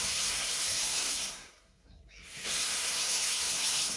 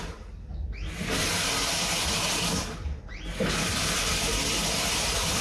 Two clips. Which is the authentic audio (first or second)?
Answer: second